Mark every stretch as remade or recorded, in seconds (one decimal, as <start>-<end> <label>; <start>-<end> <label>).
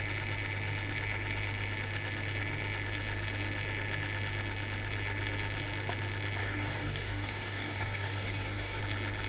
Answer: 0.0-6.4 recorded; 6.4-8.8 remade; 8.8-9.3 recorded